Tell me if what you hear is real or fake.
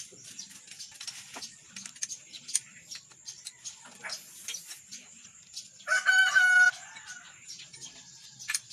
real